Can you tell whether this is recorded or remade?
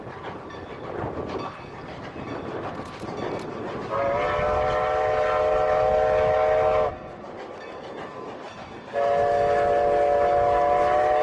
recorded